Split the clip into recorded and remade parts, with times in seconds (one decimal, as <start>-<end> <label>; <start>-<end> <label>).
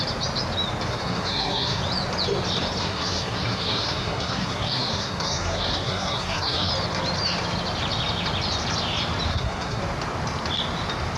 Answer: 0.0-0.9 recorded; 0.9-1.8 remade; 1.8-2.8 recorded; 2.8-6.7 remade; 6.7-9.3 recorded; 9.3-9.8 remade; 9.8-11.2 recorded